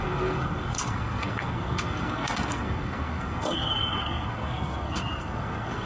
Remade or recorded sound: remade